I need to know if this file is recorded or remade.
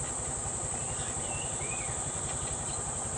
remade